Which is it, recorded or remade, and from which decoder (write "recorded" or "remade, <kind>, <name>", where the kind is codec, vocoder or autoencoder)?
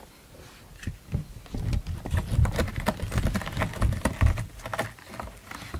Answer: recorded